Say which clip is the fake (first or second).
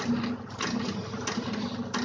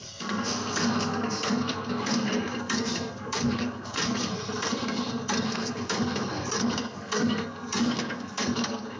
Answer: second